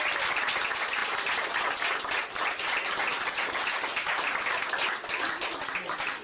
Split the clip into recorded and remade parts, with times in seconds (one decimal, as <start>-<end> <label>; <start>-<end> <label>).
0.0-6.2 recorded